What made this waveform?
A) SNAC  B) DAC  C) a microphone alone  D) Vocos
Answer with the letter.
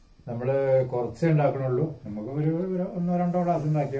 C